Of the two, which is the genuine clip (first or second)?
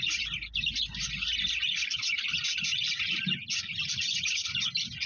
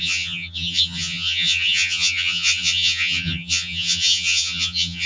first